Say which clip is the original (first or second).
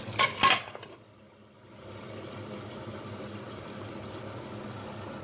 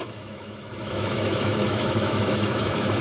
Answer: first